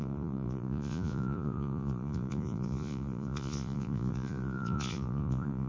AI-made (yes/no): yes